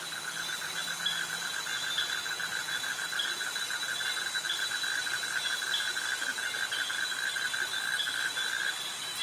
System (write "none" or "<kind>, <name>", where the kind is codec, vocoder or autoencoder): none